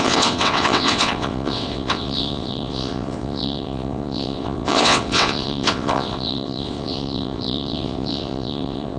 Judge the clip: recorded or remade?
remade